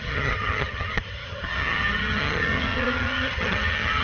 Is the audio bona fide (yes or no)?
no